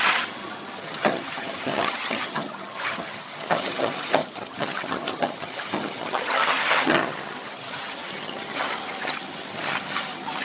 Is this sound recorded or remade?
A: remade